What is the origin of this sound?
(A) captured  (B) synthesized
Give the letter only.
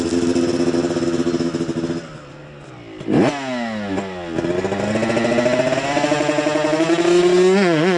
A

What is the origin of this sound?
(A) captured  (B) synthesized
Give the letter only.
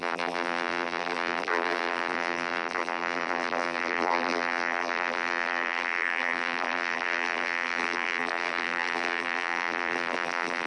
B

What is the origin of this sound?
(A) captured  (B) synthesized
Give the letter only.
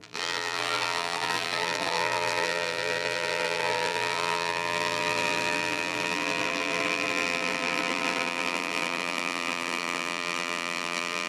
B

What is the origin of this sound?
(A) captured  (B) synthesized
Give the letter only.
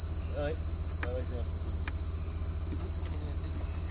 A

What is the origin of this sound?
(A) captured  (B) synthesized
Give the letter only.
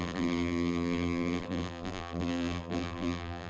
B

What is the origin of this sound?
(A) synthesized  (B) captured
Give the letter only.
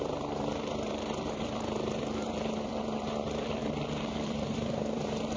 A